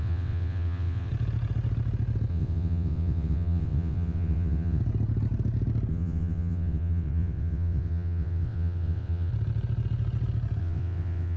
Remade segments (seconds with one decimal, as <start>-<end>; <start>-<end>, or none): 0.0-1.1; 2.3-4.8; 5.9-9.3; 10.6-11.4